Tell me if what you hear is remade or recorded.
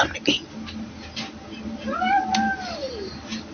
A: recorded